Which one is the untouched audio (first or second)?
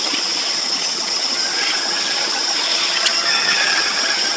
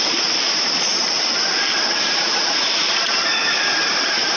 second